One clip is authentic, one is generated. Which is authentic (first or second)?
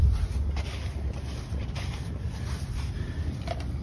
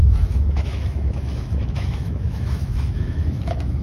first